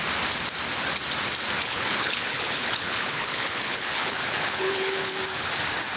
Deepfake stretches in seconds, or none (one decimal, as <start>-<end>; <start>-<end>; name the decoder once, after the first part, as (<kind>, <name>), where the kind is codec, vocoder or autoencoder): 1.6-5.2 (codec, HILCodec)